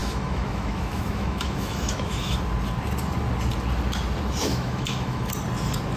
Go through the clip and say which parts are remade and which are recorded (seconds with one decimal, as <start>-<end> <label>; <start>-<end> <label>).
0.0-2.4 remade; 2.4-4.5 recorded; 4.5-5.3 remade; 5.3-6.0 recorded